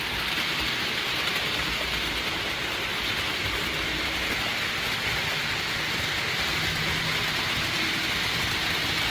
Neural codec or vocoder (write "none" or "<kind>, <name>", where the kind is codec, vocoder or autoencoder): none